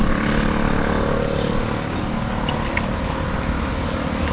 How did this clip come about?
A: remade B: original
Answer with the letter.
B